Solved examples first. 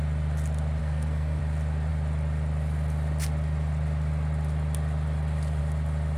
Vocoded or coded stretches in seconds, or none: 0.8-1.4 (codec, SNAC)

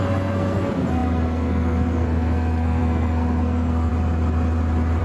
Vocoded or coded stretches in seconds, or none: 0.0-3.9 (codec, SNAC)

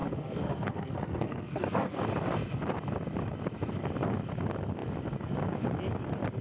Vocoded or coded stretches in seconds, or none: 0.0-2.0 (codec, SNAC)

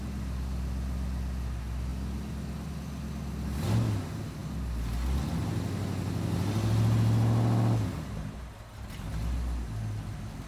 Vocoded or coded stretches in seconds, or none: none

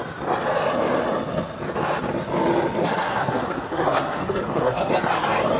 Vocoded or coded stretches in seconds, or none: 2.8-4.9 (codec, SNAC)